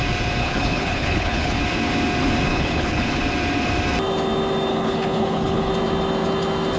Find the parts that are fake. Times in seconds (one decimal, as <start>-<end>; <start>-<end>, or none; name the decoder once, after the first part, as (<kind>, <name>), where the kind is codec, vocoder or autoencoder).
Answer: 0.4-1.6 (codec, HILCodec); 2.5-3.2; 4.7-5.7